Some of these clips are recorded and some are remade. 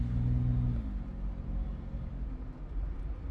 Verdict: recorded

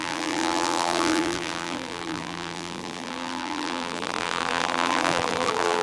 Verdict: remade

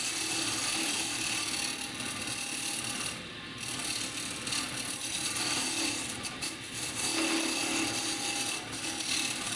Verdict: recorded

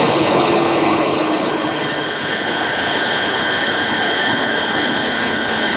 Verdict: remade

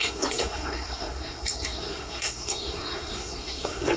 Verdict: remade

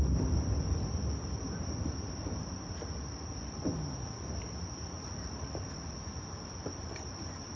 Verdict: recorded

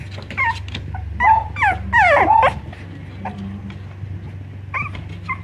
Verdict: recorded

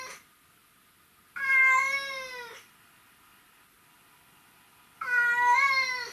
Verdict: recorded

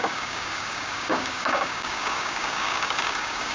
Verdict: remade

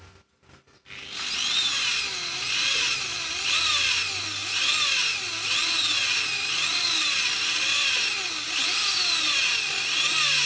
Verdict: recorded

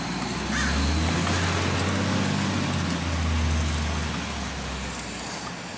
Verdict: recorded